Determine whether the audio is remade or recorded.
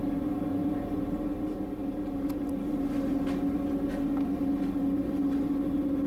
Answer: recorded